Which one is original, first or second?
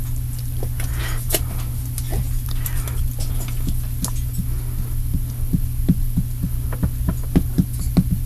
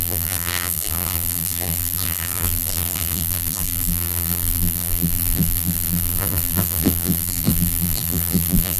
first